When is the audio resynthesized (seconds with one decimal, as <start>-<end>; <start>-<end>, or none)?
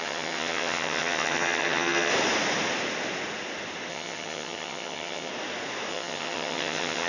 0.0-2.1; 3.9-5.3; 5.9-7.1